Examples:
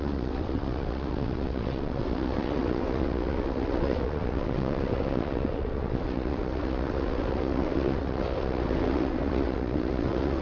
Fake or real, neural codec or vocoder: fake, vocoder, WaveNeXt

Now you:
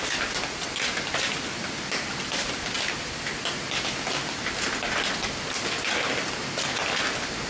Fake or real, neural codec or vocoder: real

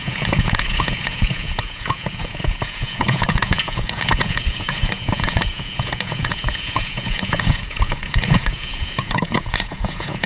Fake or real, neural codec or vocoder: fake, vocoder, Vocos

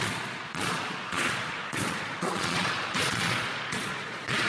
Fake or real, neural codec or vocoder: fake, vocoder, Vocos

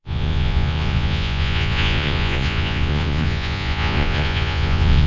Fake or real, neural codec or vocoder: fake, vocoder, Vocos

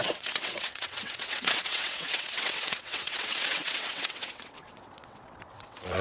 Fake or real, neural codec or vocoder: fake, vocoder, WaveNeXt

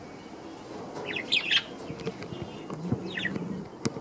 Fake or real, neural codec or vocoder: real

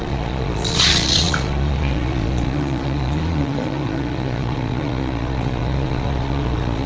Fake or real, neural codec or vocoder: fake, vocoder, Vocos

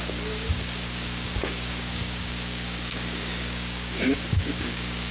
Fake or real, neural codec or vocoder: fake, codec, DAC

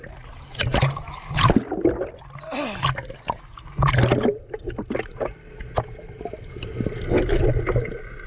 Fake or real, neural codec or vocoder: real